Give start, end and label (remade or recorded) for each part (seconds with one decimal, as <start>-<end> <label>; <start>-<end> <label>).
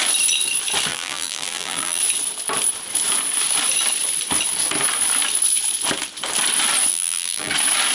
0.0-0.9 recorded; 0.9-2.0 remade; 2.0-6.9 recorded; 6.9-7.5 remade; 7.5-7.9 recorded